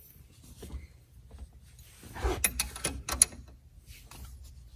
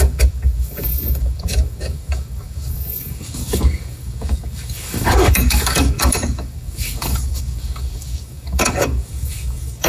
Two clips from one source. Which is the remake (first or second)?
second